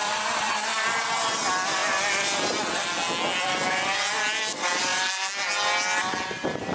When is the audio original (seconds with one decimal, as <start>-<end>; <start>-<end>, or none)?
0.0-6.7